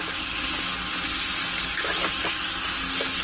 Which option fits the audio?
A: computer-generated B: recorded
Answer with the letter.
B